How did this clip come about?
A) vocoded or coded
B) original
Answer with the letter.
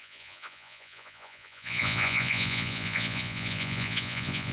A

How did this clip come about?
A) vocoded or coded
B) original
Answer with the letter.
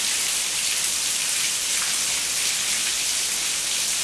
B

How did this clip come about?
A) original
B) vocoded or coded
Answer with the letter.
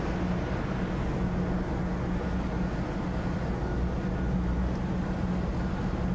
A